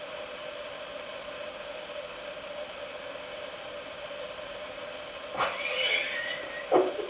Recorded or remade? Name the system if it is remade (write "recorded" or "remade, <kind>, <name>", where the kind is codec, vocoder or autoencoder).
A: recorded